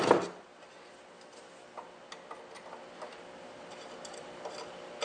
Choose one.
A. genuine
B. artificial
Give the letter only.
A